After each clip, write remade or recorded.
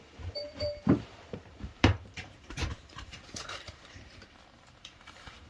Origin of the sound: remade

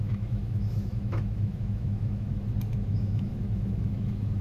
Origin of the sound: remade